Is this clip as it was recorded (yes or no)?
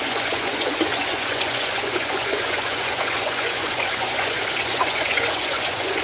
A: no